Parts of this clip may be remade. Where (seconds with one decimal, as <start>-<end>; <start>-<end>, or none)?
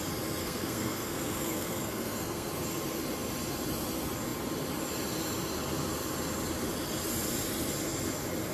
0.4-2.5